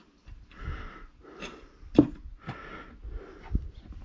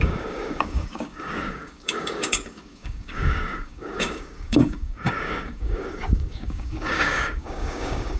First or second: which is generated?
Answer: second